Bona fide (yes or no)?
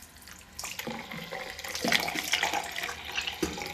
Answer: yes